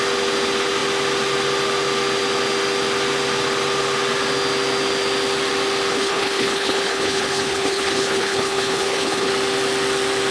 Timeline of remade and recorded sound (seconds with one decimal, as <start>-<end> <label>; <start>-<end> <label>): 0.0-5.9 recorded; 5.9-9.3 remade; 9.3-10.3 recorded